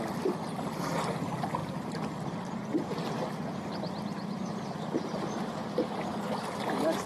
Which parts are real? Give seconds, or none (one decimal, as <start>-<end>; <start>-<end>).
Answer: 0.0-1.6; 2.9-7.1